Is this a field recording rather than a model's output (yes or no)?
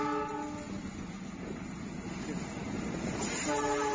yes